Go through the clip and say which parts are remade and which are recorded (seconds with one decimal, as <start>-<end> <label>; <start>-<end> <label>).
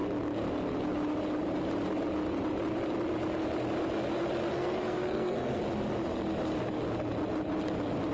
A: 0.0-4.5 recorded; 4.5-5.6 remade; 5.6-8.1 recorded